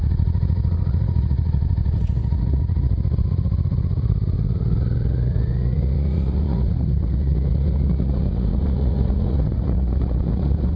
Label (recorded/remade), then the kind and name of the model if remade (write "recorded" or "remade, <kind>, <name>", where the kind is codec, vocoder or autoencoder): remade, vocoder, Vocos